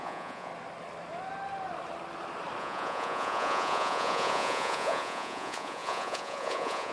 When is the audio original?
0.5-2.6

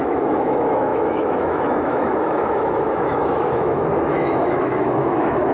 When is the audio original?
none

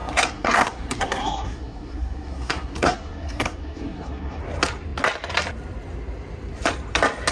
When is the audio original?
4.4-7.3